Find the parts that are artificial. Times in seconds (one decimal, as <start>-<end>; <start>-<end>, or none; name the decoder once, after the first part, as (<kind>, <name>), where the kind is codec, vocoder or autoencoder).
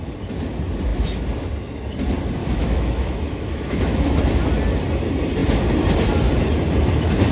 2.4-4.2 (autoencoder, DAC-VAE)